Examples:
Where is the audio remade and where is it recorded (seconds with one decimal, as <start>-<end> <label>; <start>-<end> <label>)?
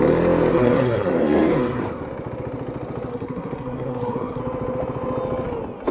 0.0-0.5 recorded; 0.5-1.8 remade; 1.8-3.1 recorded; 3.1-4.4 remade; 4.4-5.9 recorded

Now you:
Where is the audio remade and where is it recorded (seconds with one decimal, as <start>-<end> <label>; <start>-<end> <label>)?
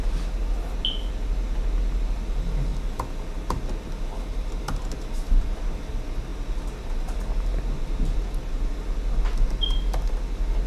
0.0-10.7 recorded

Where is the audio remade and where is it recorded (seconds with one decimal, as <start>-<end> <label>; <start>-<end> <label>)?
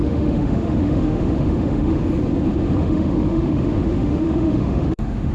0.0-2.0 remade; 2.0-2.8 recorded; 2.8-5.3 remade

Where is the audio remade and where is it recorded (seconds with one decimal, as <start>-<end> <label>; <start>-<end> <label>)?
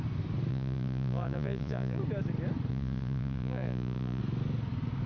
0.0-0.5 recorded; 0.5-2.0 remade; 2.0-2.7 recorded; 2.7-4.2 remade; 4.2-5.1 recorded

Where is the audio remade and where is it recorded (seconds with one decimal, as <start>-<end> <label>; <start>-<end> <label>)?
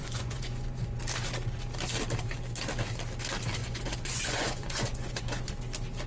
0.0-1.0 remade; 1.0-3.6 recorded; 3.6-5.5 remade; 5.5-6.1 recorded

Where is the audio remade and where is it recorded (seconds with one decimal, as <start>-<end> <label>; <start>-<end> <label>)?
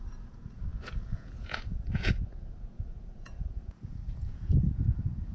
0.0-5.3 remade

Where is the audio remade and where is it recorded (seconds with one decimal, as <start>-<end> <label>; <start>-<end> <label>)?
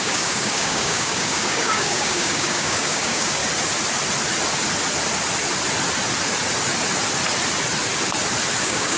0.0-3.4 remade; 3.4-8.6 recorded; 8.6-9.0 remade